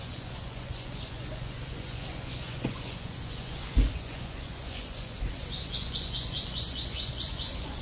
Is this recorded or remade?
remade